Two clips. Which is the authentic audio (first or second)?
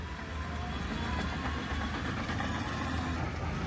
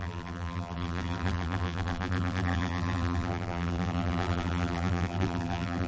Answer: first